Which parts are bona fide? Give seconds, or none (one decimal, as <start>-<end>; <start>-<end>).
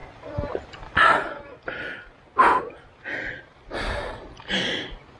0.0-5.2